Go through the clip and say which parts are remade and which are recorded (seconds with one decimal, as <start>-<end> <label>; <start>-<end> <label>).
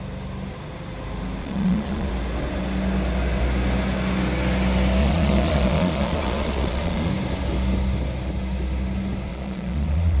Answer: 0.0-1.4 recorded; 1.4-2.1 remade; 2.1-5.0 recorded; 5.0-7.1 remade; 7.1-9.3 recorded; 9.3-10.2 remade